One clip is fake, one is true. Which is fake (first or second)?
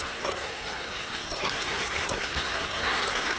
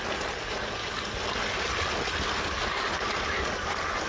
first